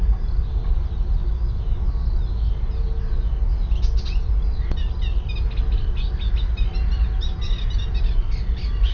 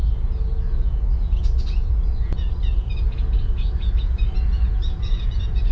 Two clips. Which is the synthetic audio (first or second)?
second